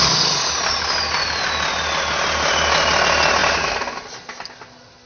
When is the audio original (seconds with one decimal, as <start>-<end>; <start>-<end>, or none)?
0.0-5.1